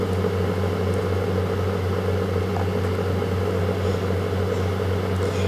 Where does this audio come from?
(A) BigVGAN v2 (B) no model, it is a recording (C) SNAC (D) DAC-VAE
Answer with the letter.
B